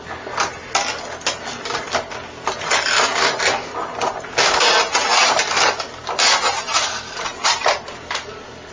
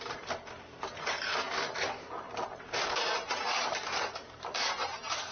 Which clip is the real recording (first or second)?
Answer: first